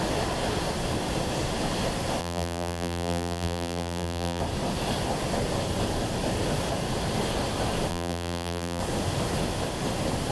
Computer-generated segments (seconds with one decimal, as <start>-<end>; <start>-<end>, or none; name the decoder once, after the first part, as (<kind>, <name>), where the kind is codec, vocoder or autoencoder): 2.2-4.4 (vocoder, BigVGAN v2); 7.9-8.8